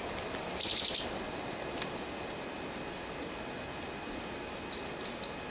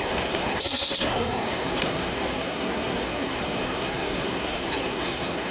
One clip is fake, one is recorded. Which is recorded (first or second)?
first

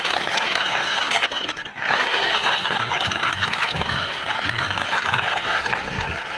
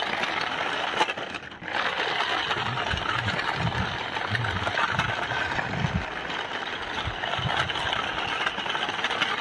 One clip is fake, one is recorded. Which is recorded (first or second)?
second